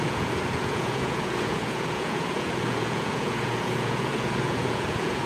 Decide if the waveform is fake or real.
fake